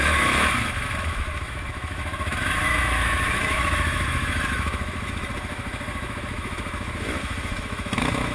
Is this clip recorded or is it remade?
remade